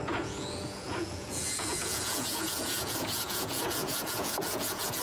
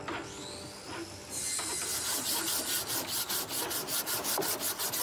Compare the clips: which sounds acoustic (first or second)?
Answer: second